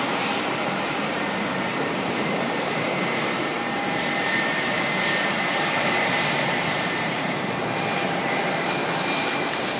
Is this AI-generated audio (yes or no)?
yes